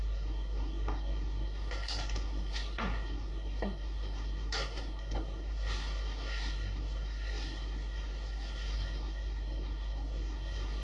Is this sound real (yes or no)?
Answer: no